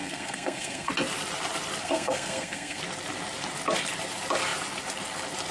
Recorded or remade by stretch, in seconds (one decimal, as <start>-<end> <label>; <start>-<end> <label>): 0.0-0.9 remade; 0.9-1.8 recorded; 1.8-2.8 remade; 2.8-5.5 recorded